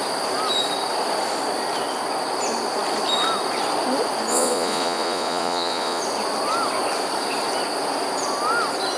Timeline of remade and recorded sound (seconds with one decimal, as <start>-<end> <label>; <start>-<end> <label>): 0.0-4.3 recorded; 4.3-6.0 remade; 6.0-9.0 recorded